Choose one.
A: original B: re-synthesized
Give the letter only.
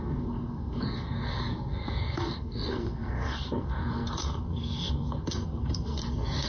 B